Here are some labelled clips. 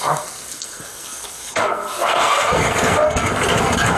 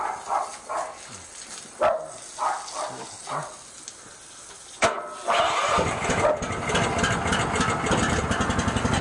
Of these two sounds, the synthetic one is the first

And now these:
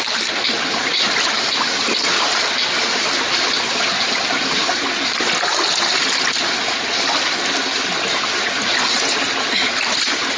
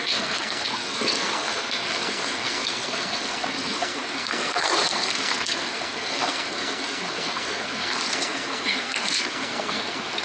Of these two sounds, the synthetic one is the second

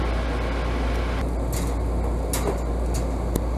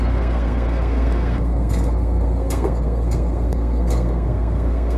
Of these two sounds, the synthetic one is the second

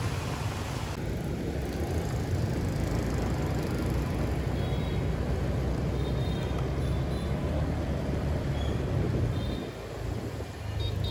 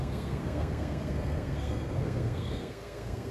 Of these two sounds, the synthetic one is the second